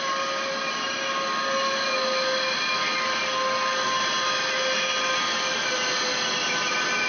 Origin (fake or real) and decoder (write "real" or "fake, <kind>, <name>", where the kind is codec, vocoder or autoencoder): real